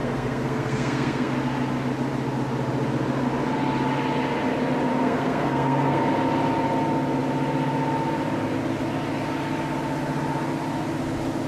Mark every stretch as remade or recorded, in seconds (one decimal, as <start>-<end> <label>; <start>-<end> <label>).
0.0-1.3 remade; 1.3-4.9 recorded; 4.9-6.0 remade; 6.0-11.5 recorded